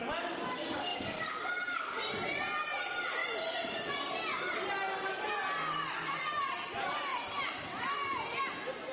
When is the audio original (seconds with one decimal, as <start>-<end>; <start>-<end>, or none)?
0.0-8.9